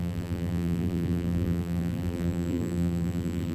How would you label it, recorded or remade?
remade